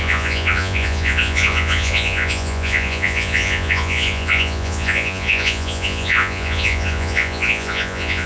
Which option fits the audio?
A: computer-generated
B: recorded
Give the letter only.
A